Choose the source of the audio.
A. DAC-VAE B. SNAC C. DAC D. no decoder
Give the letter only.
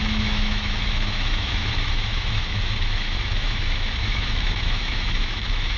A